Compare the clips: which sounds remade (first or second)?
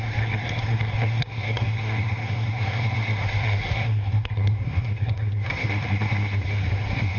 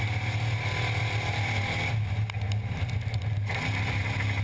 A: first